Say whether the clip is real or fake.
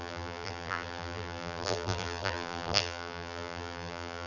fake